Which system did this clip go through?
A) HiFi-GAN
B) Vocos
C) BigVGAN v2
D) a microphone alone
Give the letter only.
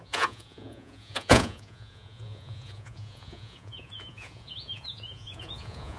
B